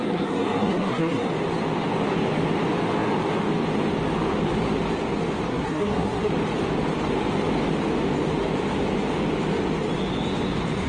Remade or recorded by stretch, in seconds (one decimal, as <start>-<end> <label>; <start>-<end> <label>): 0.0-1.3 remade; 1.3-5.5 recorded; 5.5-6.3 remade; 6.3-10.9 recorded